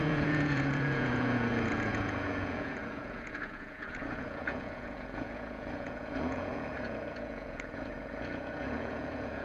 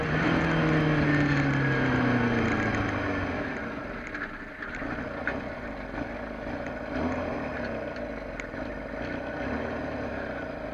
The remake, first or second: first